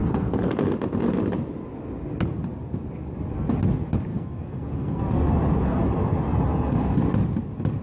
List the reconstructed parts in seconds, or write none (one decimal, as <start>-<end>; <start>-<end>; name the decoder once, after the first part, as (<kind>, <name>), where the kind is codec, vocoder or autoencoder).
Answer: 0.0-0.6 (codec, SNAC); 4.1-5.0